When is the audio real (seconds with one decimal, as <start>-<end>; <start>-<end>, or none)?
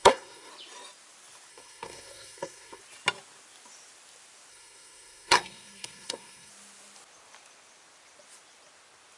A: 0.5-1.5; 2.8-4.5; 6.5-9.2